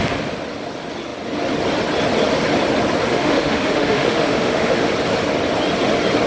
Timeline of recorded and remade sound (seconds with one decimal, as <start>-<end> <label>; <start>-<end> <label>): 0.0-3.1 recorded; 3.1-4.9 remade; 4.9-6.3 recorded